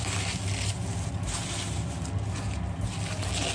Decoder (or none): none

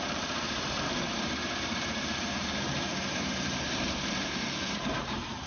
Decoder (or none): vocoder, BigVGAN v2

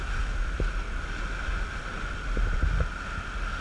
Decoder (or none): none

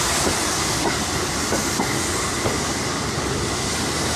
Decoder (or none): none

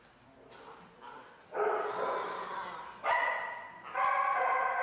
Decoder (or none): none